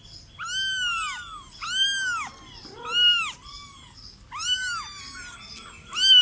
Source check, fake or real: real